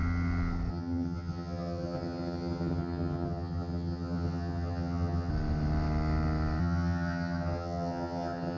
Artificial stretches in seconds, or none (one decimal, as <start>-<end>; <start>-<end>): 0.7-5.3; 6.6-8.6